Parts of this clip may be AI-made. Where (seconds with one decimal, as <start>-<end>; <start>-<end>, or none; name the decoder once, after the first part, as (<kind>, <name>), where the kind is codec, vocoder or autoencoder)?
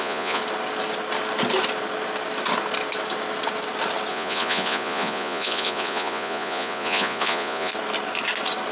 0.0-0.4 (vocoder, Vocos); 4.1-7.7